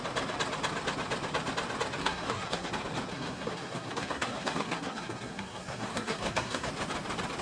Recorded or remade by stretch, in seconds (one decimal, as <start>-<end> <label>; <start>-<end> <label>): 0.0-2.0 recorded; 2.0-2.7 remade; 2.7-3.1 recorded; 3.1-6.7 remade; 6.7-7.4 recorded